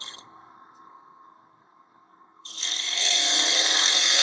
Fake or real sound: fake